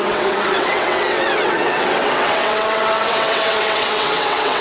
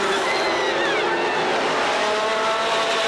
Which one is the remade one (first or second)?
first